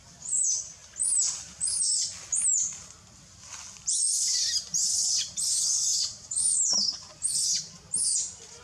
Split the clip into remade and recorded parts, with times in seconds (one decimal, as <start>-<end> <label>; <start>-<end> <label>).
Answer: 0.0-3.8 recorded; 3.8-7.6 remade; 7.6-8.6 recorded